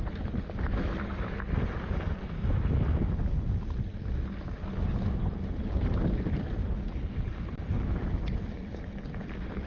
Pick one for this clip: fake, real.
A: real